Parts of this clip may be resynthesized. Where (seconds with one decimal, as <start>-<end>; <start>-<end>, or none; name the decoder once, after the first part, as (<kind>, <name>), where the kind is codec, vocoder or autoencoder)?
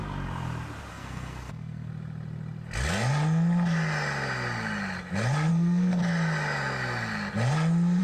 0.9-1.9 (codec, SNAC); 5.5-6.0